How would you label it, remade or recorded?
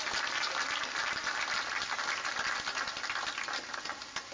recorded